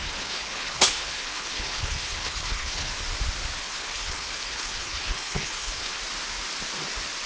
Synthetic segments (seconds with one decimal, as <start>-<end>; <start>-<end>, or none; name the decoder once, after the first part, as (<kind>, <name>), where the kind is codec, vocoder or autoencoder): 0.0-2.9 (codec, HILCodec); 3.6-6.0